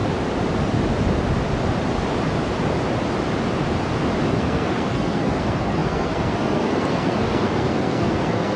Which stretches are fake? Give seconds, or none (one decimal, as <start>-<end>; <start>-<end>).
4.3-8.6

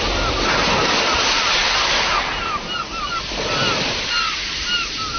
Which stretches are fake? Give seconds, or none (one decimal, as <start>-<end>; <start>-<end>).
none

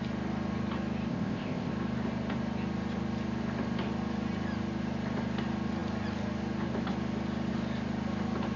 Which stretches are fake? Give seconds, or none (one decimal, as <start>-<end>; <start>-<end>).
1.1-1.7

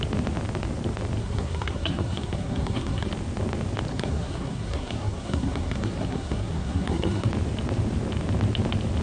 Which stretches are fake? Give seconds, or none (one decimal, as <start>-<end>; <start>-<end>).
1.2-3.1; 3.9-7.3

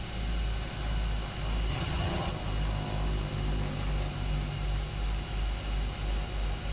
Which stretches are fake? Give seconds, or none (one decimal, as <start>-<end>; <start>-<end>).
1.7-2.3

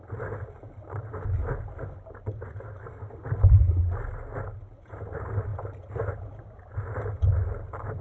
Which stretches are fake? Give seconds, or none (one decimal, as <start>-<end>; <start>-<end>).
none

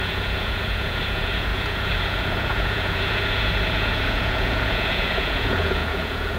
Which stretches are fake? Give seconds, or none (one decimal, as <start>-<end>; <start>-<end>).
0.0-6.4